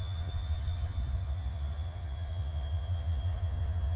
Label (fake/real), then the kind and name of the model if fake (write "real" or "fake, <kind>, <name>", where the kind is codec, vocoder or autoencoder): fake, vocoder, Vocos